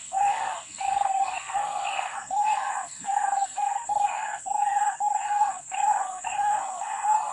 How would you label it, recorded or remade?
remade